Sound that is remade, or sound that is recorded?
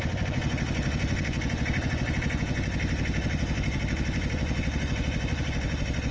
remade